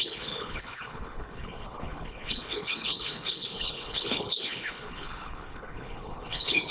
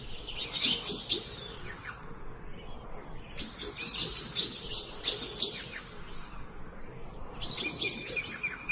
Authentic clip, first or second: second